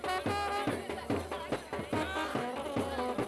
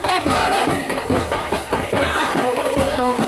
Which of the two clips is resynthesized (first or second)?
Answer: second